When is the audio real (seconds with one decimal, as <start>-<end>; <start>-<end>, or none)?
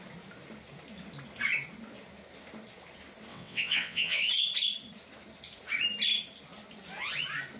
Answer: 0.0-3.3; 4.3-7.6